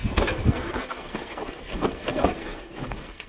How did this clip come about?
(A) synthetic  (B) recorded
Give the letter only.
A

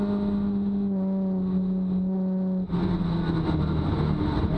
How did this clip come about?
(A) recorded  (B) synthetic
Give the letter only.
A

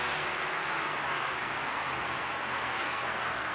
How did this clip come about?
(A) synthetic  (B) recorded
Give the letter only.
A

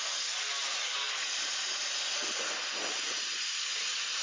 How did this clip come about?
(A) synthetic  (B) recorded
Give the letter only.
B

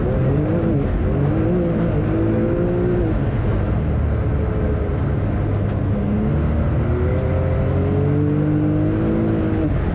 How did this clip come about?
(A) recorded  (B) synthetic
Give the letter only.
A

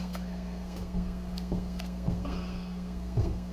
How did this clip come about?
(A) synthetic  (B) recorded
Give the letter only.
A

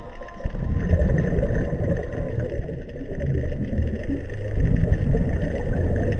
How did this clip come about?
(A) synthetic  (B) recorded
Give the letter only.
B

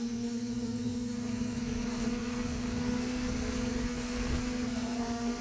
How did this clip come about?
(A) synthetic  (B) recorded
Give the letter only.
A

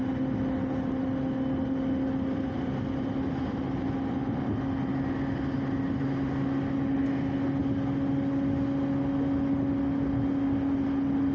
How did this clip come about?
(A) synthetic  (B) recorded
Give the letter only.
B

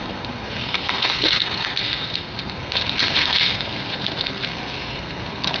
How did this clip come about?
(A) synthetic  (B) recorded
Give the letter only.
A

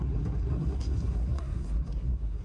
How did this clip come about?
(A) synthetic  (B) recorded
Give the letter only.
A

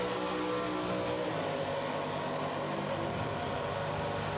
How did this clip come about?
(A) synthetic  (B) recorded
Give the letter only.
B